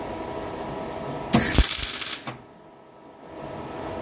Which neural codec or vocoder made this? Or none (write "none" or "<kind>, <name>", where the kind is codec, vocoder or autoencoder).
none